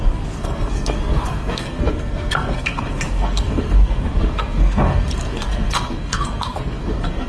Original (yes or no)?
no